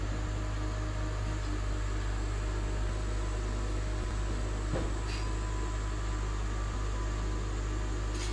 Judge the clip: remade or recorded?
recorded